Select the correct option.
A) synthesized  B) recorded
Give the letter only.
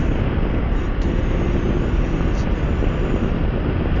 B